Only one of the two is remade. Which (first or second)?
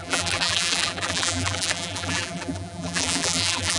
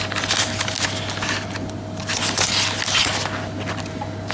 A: first